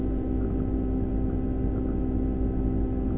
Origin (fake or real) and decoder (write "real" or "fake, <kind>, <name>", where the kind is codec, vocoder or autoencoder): real